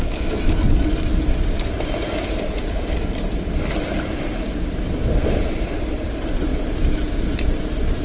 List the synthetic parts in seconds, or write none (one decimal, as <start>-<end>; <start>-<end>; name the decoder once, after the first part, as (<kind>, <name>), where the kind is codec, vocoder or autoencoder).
none